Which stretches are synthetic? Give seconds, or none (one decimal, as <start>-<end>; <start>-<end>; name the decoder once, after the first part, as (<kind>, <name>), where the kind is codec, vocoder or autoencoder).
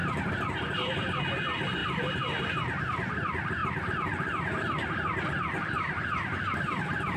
0.0-1.2 (vocoder, BigVGAN v2); 1.8-2.8; 3.6-7.2